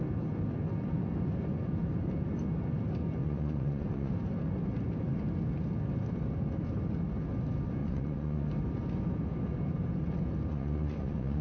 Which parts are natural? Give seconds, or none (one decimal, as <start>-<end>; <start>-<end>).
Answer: 0.0-3.2; 4.1-7.8; 8.5-10.5

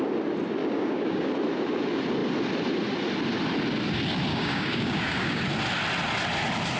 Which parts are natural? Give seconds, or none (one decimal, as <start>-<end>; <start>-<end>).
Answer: 0.0-0.6; 1.3-4.3; 5.4-6.8